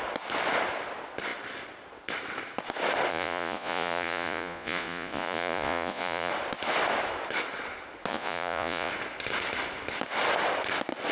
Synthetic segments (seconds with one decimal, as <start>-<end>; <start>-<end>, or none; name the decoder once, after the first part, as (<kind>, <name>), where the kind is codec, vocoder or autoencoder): 3.1-6.3 (vocoder, Vocos); 8.1-8.9